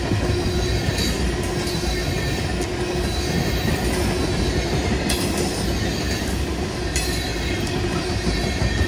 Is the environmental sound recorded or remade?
recorded